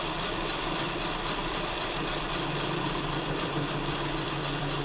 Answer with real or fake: fake